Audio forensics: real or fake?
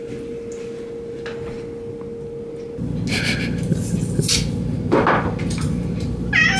real